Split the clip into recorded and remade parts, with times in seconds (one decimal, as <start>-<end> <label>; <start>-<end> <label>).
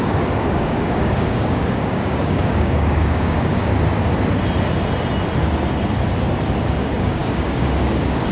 0.0-3.7 remade; 3.7-6.6 recorded; 6.6-8.3 remade